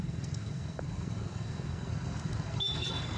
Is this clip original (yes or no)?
no